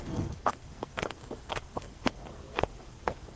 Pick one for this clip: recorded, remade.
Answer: remade